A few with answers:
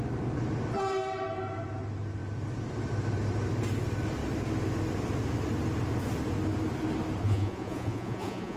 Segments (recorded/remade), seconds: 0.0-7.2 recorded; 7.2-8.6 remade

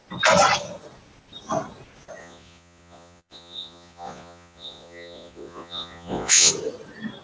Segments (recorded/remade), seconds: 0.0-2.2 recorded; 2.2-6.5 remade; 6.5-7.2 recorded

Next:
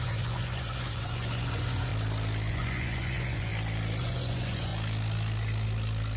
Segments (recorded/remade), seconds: 0.0-1.9 remade; 1.9-2.5 recorded; 2.5-3.5 remade; 3.5-4.0 recorded; 4.0-4.7 remade; 4.7-6.2 recorded